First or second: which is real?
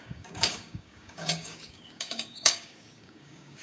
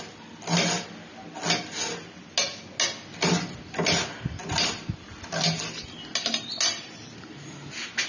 second